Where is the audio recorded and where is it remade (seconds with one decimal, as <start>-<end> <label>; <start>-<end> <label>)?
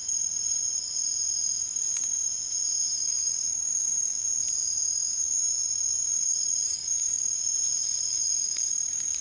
0.0-0.6 remade; 0.6-2.8 recorded; 2.8-4.2 remade; 4.2-5.1 recorded; 5.1-7.4 remade; 7.4-8.1 recorded; 8.1-9.2 remade